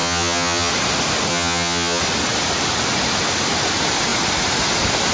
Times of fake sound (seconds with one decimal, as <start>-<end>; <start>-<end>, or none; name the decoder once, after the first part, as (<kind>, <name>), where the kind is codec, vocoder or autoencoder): 0.0-0.7 (vocoder, HiFi-GAN); 1.3-2.0